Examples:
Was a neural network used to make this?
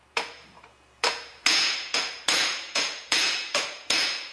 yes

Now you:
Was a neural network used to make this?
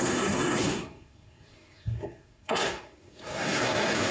yes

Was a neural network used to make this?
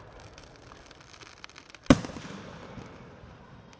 yes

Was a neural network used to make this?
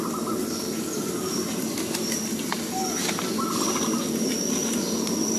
no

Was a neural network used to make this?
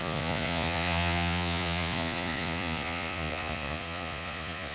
yes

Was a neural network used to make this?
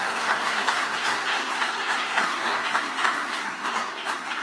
yes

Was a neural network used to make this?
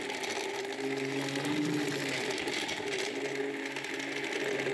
no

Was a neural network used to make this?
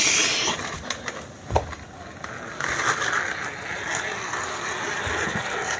no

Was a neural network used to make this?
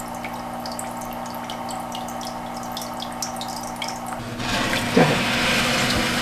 no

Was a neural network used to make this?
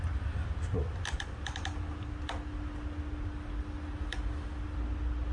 no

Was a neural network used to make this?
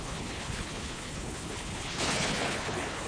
yes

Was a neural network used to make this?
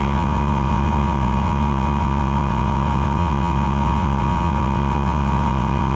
yes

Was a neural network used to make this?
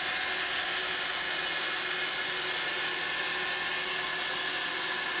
no